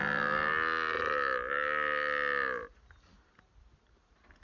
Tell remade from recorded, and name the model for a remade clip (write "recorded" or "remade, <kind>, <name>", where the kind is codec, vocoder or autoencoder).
recorded